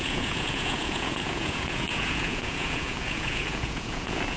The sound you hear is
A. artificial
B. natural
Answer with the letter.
A